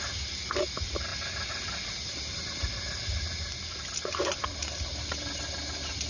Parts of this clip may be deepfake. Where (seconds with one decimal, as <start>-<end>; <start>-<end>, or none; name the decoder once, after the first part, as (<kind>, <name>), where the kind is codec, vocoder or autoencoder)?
none